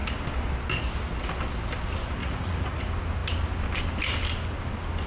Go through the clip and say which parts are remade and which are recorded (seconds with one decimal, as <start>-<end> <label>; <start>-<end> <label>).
0.0-2.2 recorded; 2.2-2.8 remade; 2.8-5.1 recorded